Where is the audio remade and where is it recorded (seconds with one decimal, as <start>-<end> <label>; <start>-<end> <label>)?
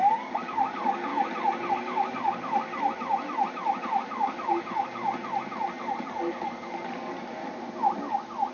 0.0-1.1 remade; 1.1-1.7 recorded; 1.7-2.7 remade; 2.7-3.8 recorded; 3.8-5.0 remade; 5.0-5.8 recorded; 5.8-7.4 remade; 7.4-8.5 recorded